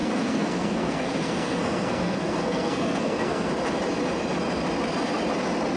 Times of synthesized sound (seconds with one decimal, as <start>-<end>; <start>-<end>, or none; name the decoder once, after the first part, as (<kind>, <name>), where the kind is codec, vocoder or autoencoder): 0.0-3.5 (codec, SNAC)